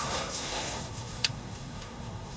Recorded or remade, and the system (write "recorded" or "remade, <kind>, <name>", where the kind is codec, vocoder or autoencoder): remade, codec, SNAC